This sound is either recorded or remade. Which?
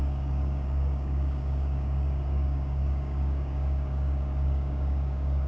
remade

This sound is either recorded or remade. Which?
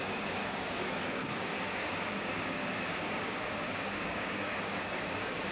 remade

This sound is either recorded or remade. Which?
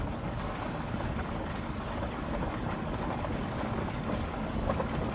remade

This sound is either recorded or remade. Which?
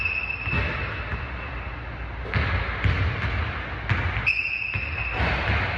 recorded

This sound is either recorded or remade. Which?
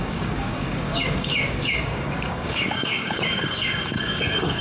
remade